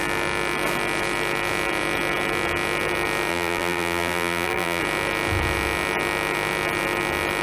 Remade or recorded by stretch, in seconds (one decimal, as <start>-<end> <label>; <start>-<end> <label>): 0.0-3.3 recorded; 3.3-4.8 remade; 4.8-7.4 recorded